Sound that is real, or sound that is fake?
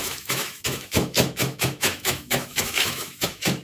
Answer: fake